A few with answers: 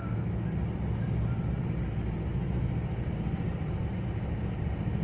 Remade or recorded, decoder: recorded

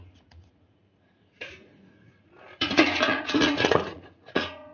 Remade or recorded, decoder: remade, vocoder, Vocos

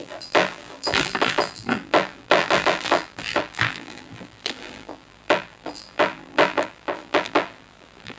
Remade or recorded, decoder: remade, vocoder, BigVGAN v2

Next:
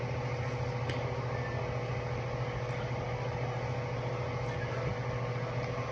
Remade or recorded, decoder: recorded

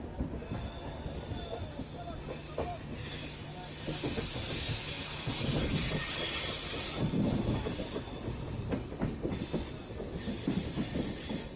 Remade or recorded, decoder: recorded